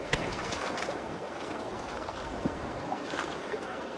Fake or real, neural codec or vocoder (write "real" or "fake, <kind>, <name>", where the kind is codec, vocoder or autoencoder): fake, codec, SNAC